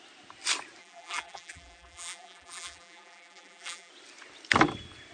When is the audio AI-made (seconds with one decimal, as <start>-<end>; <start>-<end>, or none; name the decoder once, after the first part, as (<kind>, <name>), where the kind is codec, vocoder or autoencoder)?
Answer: 0.8-3.9 (vocoder, BigVGAN v2)